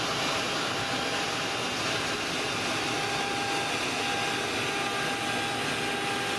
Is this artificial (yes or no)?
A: no